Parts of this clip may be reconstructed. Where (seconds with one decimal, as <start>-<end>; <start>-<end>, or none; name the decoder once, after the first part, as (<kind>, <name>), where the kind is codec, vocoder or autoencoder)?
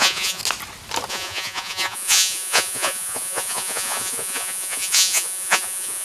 0.0-0.4 (vocoder, Vocos); 1.1-6.0